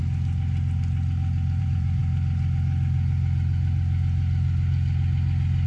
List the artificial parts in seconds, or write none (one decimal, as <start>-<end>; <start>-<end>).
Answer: 1.6-2.0